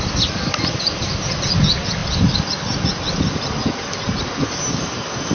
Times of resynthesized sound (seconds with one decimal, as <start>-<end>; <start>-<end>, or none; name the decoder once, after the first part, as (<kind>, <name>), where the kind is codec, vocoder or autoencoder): none